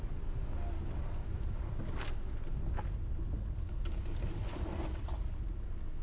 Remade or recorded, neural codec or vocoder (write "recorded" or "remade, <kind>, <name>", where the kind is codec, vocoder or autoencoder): recorded